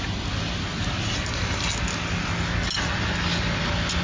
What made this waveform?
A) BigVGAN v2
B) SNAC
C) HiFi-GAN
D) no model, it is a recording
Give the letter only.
D